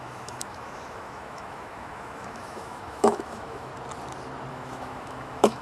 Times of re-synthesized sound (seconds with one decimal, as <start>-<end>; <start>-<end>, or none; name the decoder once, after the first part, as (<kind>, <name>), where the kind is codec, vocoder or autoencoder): 0.0-3.7 (autoencoder, DAC-VAE); 4.5-5.6

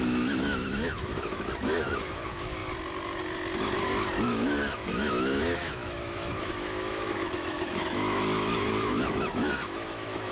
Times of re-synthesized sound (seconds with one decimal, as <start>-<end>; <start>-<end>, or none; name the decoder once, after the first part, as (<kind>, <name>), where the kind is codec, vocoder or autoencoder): 0.0-2.6 (autoencoder, DAC-VAE); 4.2-10.3

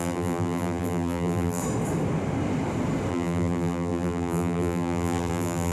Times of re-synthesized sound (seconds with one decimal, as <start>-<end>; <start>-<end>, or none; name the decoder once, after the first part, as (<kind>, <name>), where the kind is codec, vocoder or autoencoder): 0.0-1.6 (vocoder, BigVGAN v2); 3.1-5.7

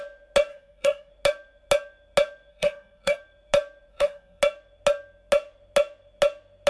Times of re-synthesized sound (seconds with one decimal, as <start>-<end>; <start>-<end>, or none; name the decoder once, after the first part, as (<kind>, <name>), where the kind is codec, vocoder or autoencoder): 0.5-1.1 (codec, SNAC); 2.5-3.2; 3.9-4.4

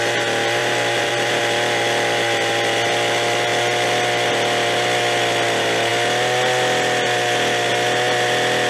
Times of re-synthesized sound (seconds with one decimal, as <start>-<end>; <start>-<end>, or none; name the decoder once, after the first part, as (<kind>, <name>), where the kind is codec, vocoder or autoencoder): 0.6-1.4 (vocoder, BigVGAN v2)

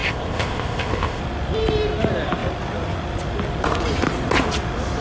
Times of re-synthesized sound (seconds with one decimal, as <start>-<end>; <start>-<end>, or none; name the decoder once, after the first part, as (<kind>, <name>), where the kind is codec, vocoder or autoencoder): 0.0-1.2 (codec, ZipCodec)